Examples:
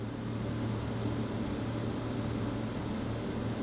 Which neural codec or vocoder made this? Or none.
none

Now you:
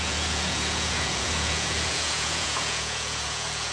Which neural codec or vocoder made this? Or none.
vocoder, Vocos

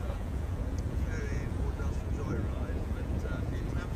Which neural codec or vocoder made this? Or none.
vocoder, Vocos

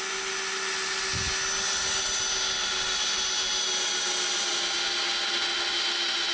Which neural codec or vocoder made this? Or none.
none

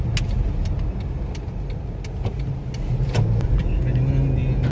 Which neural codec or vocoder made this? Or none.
none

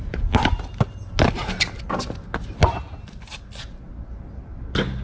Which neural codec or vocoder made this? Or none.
none